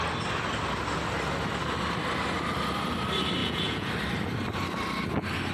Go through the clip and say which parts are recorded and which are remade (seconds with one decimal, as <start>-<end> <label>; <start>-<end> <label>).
0.0-3.4 recorded; 3.4-3.9 remade; 3.9-5.5 recorded